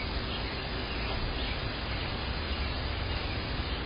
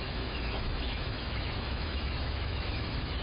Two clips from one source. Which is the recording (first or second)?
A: first